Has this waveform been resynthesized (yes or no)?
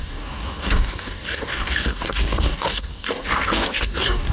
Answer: yes